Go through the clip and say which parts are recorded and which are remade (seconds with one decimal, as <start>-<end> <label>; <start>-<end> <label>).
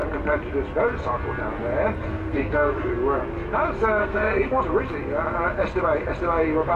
0.0-2.1 recorded; 2.1-2.9 remade; 2.9-4.0 recorded; 4.0-4.6 remade; 4.6-6.8 recorded